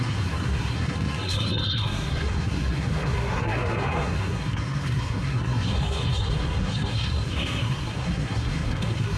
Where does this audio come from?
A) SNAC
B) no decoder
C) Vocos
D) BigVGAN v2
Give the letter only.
A